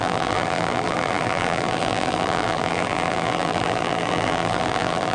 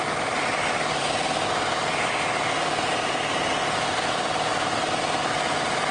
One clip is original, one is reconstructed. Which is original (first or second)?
second